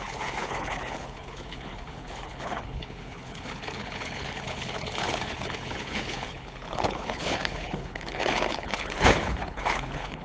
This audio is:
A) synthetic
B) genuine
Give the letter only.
A